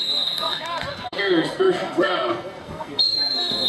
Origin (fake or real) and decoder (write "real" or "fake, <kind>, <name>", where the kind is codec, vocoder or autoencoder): fake, codec, SNAC